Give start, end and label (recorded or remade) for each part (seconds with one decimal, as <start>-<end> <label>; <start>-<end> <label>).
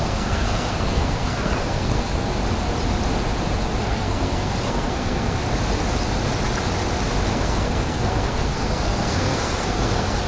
0.0-2.3 remade; 2.3-3.8 recorded; 3.8-5.4 remade; 5.4-7.3 recorded; 7.3-10.3 remade